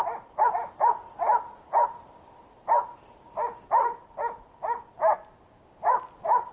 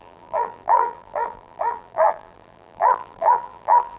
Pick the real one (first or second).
first